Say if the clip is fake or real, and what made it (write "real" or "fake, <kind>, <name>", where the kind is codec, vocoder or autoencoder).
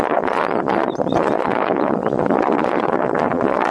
fake, vocoder, Vocos